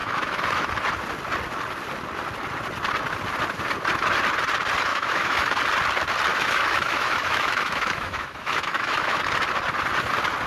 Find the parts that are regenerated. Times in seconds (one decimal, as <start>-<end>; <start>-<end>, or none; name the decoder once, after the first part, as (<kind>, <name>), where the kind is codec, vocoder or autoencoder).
0.0-0.7 (autoencoder, DAC-VAE); 4.9-5.6; 6.3-9.2